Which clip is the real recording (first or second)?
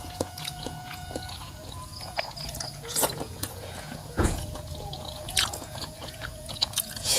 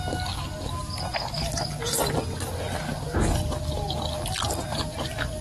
second